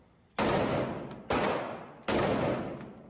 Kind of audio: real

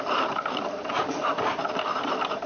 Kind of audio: fake